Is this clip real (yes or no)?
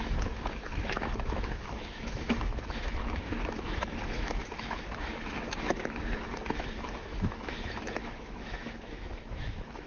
no